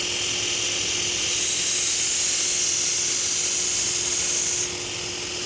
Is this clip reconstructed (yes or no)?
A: no